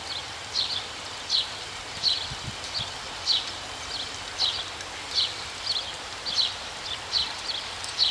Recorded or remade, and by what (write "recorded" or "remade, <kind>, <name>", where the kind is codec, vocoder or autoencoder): recorded